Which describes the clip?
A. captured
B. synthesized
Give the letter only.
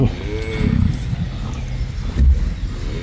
A